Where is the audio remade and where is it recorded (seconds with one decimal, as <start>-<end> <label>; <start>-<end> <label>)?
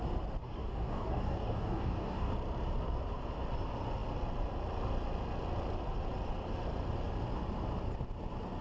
0.0-0.4 recorded; 0.4-2.3 remade; 2.3-8.6 recorded